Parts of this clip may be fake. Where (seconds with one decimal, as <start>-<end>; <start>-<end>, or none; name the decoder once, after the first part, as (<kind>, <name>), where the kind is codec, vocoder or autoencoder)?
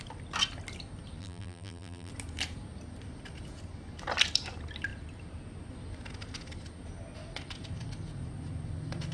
1.2-2.1 (vocoder, BigVGAN v2)